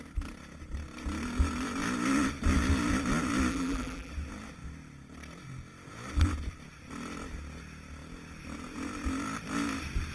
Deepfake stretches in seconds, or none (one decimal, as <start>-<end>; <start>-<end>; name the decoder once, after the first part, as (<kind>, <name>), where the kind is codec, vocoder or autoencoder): 3.5-4.1 (vocoder, BigVGAN v2)